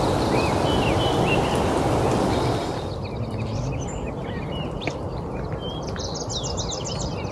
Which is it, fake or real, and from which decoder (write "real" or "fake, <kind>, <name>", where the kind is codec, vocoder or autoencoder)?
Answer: real